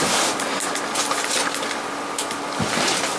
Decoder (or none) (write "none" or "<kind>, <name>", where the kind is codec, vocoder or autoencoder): none